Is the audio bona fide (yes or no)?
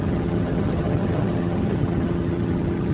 no